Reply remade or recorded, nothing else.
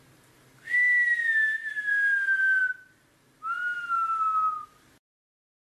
recorded